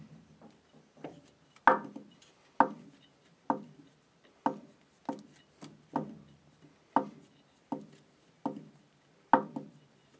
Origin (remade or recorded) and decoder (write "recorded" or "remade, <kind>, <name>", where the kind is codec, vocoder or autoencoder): recorded